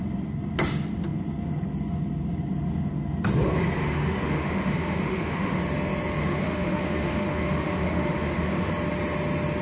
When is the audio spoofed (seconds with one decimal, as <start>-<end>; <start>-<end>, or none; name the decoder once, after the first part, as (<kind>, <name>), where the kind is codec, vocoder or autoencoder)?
3.8-5.6 (autoencoder, DAC-VAE); 6.2-8.7